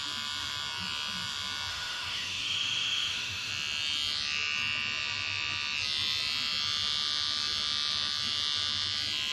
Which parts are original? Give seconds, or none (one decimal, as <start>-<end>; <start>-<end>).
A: 0.0-1.7; 3.5-9.3